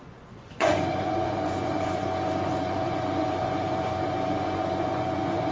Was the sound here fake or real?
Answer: fake